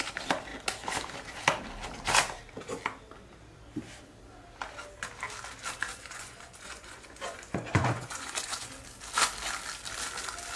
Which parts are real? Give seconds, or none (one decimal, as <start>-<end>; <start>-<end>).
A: 0.0-5.9; 8.7-10.6